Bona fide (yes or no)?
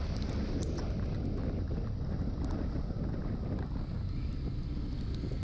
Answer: yes